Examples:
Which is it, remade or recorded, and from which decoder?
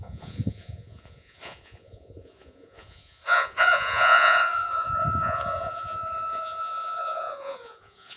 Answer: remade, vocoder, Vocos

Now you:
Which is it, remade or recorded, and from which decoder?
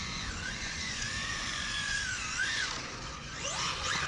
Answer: remade, vocoder, Vocos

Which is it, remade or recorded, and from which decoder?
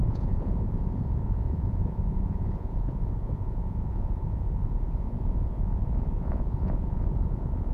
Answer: remade, vocoder, Vocos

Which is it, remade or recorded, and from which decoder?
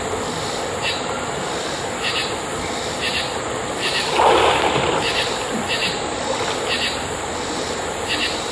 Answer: recorded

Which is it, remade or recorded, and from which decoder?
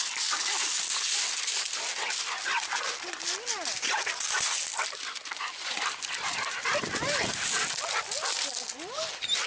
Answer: recorded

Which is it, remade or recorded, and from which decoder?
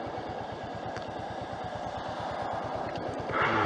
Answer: recorded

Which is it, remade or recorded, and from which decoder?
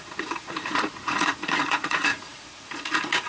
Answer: remade, vocoder, Vocos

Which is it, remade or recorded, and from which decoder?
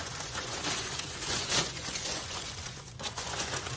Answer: remade, vocoder, Vocos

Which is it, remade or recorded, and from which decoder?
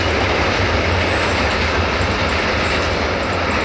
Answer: recorded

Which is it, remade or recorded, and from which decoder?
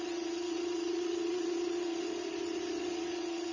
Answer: remade, vocoder, Vocos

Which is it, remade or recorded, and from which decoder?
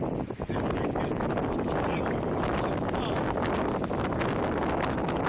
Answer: recorded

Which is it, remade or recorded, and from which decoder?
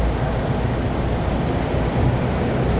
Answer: recorded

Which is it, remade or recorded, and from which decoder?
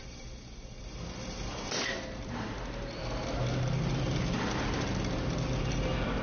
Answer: recorded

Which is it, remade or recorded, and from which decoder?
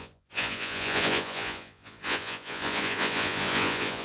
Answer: remade, vocoder, Vocos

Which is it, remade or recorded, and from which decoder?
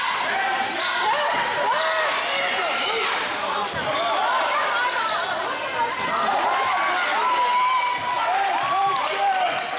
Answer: recorded